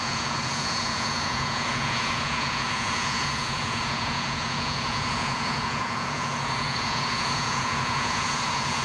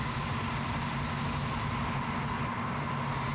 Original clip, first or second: second